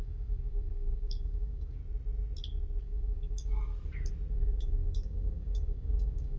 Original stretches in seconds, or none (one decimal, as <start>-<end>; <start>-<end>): 1.8-2.8; 3.5-4.3

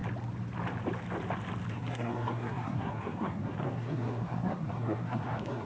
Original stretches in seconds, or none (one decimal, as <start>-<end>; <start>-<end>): 0.0-1.7

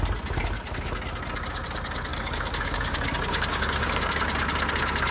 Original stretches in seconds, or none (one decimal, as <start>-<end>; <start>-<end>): 0.0-2.1; 4.2-5.1